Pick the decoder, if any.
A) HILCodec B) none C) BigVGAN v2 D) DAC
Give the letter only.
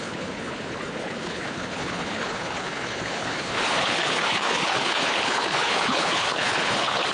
A